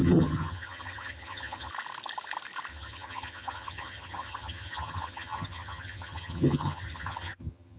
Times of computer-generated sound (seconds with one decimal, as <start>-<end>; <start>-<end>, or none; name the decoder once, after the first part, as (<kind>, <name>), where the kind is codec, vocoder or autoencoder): 0.0-1.7 (vocoder, HiFi-GAN); 2.7-7.8

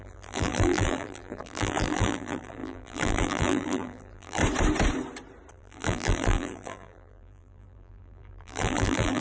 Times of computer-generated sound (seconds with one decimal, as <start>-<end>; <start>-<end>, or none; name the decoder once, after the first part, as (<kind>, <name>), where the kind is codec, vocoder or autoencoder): 0.0-4.4 (vocoder, BigVGAN v2); 5.5-9.2

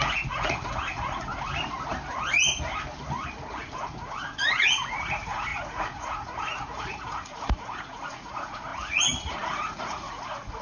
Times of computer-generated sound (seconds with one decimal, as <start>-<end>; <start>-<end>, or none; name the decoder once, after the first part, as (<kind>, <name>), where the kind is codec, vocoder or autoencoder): 0.0-1.5 (vocoder, Vocos); 3.6-10.6

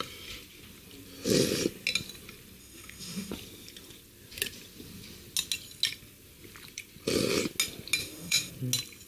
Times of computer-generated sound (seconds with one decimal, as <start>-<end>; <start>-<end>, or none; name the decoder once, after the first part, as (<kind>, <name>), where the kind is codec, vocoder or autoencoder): 2.6-3.3 (autoencoder, DAC-VAE); 8.0-8.5

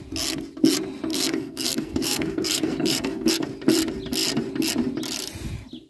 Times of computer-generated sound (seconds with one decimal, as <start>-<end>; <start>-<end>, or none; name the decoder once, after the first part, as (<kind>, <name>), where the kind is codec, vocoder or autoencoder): 1.1-3.3 (codec, SNAC)